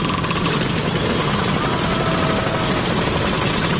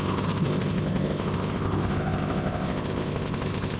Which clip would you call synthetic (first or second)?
second